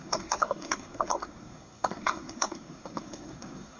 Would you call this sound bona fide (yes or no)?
no